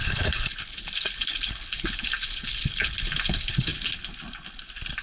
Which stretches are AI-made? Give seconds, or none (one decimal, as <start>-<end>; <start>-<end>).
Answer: 0.0-3.7

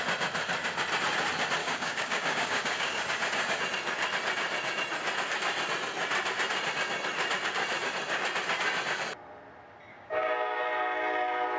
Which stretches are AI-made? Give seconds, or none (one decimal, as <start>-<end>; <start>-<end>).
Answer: 1.6-3.0; 9.9-10.6

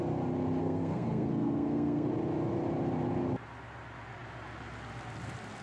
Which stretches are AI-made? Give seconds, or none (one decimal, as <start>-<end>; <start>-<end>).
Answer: 0.6-2.1

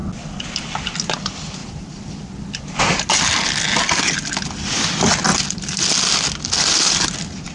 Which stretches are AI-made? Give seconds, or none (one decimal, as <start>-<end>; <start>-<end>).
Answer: none